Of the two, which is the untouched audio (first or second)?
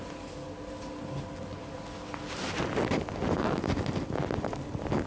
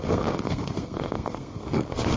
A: first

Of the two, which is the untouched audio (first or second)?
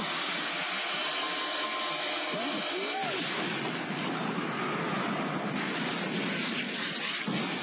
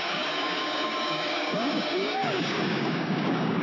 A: first